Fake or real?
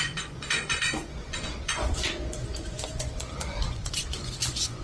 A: fake